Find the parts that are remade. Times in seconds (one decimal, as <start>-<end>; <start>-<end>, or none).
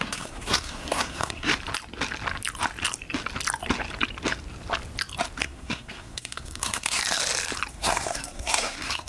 0.0-1.5; 5.4-7.0; 7.7-9.1